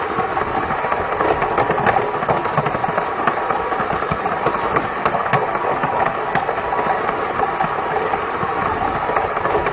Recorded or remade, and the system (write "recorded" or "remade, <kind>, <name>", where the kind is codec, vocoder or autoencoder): recorded